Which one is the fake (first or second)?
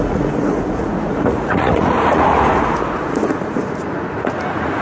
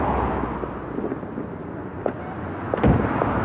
first